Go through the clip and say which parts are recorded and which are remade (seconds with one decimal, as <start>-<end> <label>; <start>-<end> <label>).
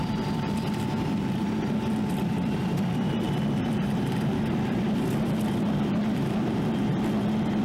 0.0-6.9 remade; 6.9-7.6 recorded